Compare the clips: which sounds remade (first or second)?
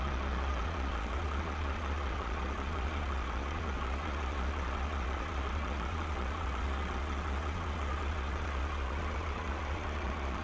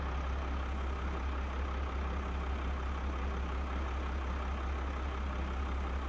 first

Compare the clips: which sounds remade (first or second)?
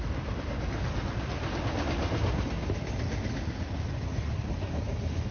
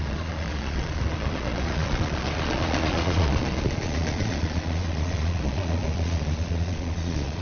second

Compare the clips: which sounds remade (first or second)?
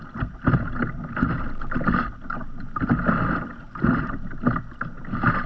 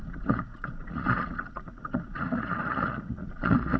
second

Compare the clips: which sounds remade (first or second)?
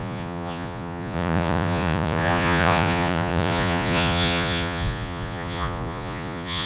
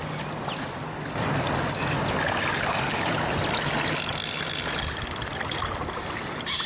first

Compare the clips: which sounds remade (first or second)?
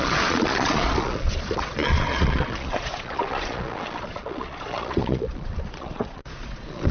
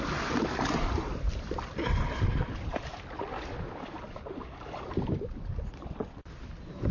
first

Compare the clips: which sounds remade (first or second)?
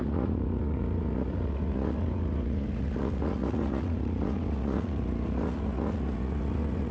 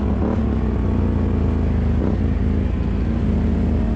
first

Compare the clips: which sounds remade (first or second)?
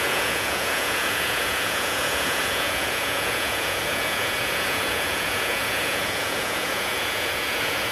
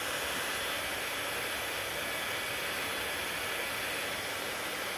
first